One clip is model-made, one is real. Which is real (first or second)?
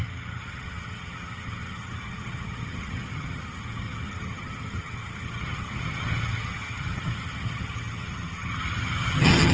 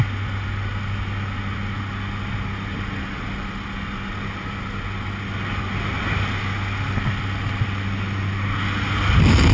second